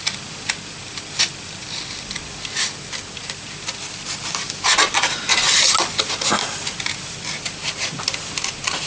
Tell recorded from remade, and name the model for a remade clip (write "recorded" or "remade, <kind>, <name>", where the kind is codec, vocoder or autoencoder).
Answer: recorded